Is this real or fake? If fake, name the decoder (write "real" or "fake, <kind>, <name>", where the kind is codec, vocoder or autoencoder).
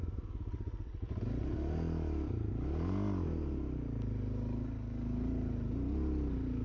real